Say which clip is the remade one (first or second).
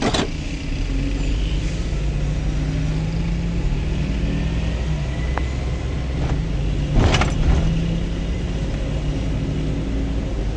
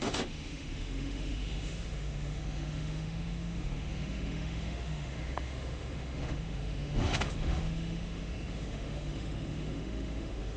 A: second